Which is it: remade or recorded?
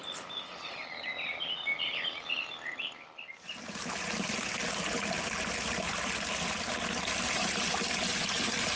recorded